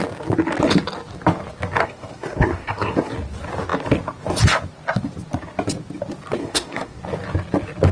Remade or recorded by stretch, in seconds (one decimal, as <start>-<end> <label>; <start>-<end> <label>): 0.0-1.8 recorded; 1.8-3.1 remade; 3.1-6.4 recorded; 6.4-7.0 remade; 7.0-7.9 recorded